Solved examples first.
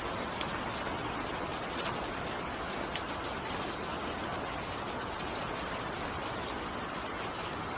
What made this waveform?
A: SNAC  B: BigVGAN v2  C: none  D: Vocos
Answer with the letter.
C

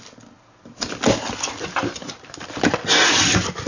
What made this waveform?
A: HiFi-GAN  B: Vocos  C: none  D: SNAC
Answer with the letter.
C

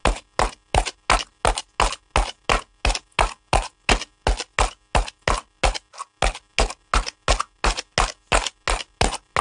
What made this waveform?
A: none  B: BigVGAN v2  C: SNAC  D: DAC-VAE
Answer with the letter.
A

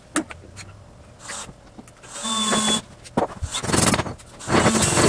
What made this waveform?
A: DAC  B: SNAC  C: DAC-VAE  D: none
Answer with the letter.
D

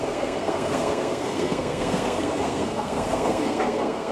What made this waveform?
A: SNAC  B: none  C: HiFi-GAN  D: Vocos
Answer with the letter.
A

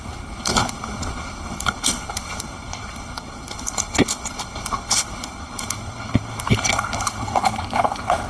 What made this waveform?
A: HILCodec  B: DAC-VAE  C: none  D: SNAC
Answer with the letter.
A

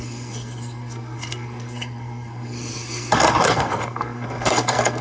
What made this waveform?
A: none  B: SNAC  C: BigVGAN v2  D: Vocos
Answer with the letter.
B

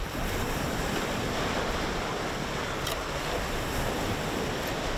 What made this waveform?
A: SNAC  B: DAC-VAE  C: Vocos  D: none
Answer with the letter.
D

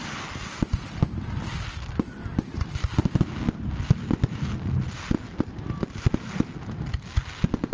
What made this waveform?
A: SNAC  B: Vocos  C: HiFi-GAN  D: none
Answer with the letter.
D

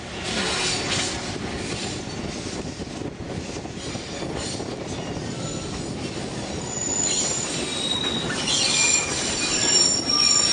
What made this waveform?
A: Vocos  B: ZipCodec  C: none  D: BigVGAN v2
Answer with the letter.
C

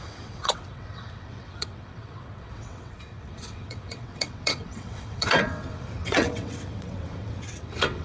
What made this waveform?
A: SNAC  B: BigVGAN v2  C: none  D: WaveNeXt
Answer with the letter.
D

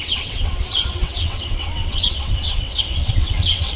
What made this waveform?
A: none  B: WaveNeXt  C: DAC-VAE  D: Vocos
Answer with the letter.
B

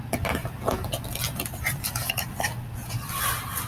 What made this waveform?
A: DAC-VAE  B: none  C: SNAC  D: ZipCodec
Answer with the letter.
B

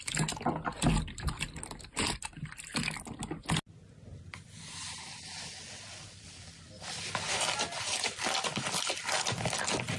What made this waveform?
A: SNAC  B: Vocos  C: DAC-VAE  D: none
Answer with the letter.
D